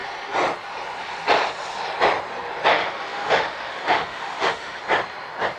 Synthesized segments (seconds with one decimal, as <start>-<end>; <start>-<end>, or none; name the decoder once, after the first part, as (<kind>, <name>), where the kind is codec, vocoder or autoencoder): 2.7-4.8 (autoencoder, DAC-VAE)